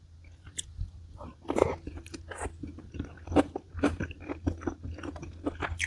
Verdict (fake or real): real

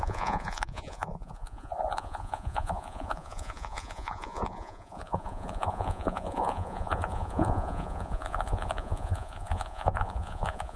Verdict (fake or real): fake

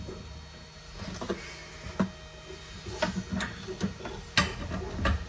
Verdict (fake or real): real